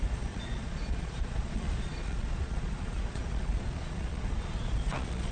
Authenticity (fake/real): fake